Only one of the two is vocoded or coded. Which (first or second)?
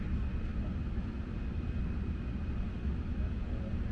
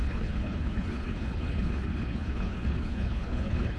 second